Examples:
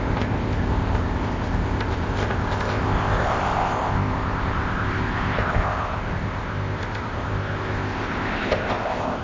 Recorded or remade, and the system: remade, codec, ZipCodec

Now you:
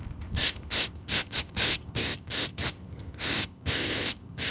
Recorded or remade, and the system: remade, codec, ZipCodec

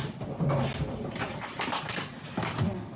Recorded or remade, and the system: recorded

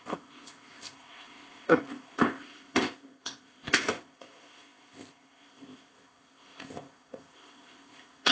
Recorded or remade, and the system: remade, codec, ZipCodec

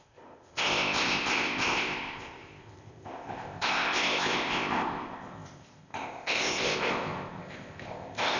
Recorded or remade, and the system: remade, codec, ZipCodec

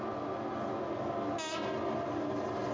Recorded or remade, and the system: recorded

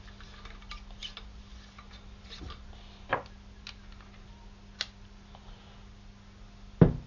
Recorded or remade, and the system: recorded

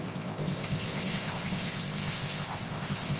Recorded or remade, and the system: remade, codec, ZipCodec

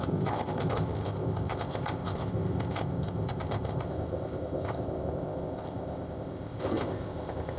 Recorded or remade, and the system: remade, codec, ZipCodec